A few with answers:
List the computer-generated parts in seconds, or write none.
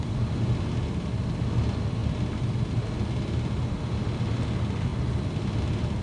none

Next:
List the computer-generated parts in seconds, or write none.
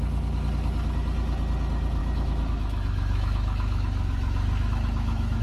2.0-5.4 (autoencoder, DAC-VAE)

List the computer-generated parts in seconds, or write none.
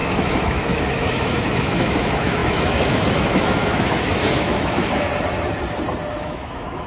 0.0-5.1 (autoencoder, DAC-VAE); 6.2-6.9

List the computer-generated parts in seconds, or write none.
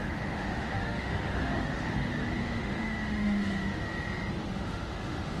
0.0-2.1 (autoencoder, DAC-VAE); 2.6-3.8; 4.5-5.4